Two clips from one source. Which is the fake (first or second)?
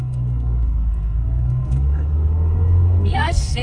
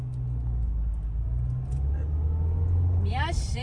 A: first